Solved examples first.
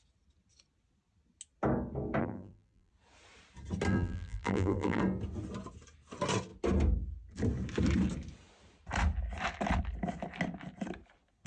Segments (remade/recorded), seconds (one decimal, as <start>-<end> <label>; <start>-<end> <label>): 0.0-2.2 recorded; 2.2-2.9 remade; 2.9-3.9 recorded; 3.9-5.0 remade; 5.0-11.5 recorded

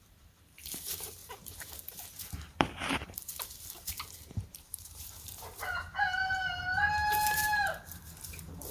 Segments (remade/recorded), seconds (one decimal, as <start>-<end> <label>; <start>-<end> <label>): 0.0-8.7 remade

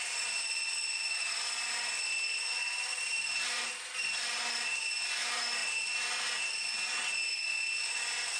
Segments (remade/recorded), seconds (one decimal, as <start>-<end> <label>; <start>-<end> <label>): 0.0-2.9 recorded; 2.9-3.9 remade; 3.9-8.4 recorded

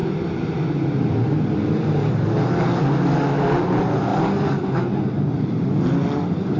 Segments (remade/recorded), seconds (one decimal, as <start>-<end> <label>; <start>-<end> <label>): 0.0-2.3 remade; 2.3-6.6 recorded

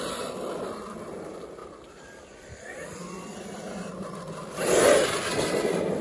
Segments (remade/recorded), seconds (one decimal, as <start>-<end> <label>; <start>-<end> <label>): 0.0-6.0 recorded

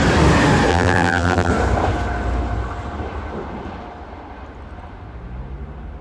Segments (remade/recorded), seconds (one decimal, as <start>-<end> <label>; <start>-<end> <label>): 0.0-0.7 recorded; 0.7-1.5 remade; 1.5-6.0 recorded

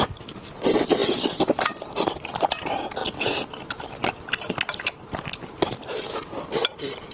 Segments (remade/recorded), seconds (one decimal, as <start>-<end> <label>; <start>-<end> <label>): 0.0-3.0 remade; 3.0-4.5 recorded; 4.5-7.1 remade